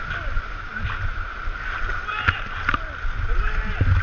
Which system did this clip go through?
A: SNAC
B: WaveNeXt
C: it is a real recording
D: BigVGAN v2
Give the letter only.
C